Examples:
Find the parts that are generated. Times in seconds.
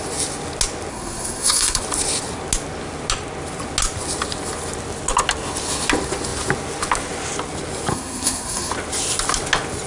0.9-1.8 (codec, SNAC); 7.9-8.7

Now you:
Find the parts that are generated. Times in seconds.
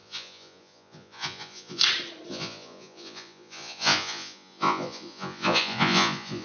0.0-1.8 (vocoder, Vocos); 2.3-6.4